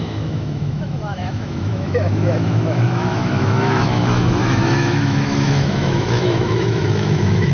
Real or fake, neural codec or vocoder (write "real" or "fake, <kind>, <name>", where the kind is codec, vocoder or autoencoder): fake, autoencoder, DAC-VAE